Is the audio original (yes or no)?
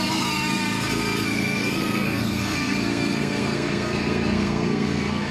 no